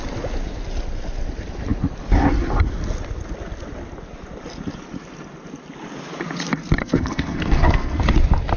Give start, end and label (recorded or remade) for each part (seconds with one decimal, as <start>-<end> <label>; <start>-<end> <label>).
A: 0.0-6.8 recorded; 6.8-8.0 remade; 8.0-8.6 recorded